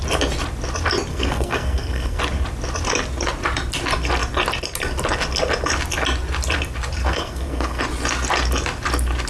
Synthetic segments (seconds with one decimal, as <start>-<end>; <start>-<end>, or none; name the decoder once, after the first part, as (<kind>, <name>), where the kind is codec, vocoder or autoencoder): 1.1-2.2 (codec, SNAC); 7.0-7.8